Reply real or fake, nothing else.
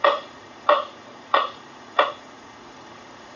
fake